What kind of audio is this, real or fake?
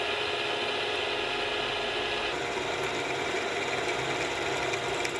real